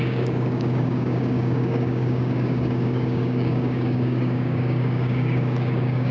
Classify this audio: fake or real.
fake